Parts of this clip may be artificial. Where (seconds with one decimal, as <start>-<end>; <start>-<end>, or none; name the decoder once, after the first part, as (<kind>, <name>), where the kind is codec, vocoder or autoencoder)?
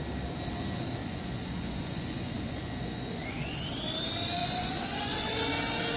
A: 1.0-3.7 (vocoder, Vocos); 4.4-5.5